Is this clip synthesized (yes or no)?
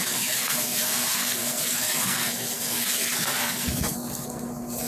yes